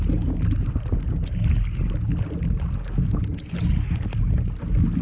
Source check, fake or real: real